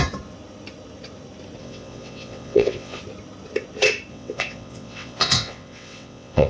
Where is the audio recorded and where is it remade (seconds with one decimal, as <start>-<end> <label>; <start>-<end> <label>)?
0.0-1.6 recorded; 1.6-3.0 remade; 3.0-4.1 recorded; 4.1-6.5 remade